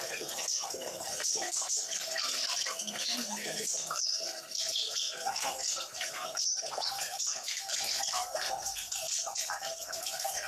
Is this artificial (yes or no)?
yes